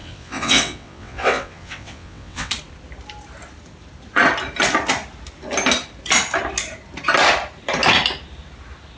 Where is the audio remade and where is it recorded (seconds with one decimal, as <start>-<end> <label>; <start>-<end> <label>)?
0.0-2.5 remade; 2.5-9.0 recorded